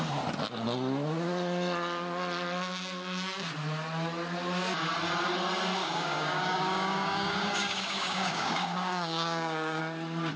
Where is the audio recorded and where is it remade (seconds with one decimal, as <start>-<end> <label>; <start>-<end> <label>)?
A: 0.0-5.8 recorded; 5.8-9.8 remade; 9.8-10.4 recorded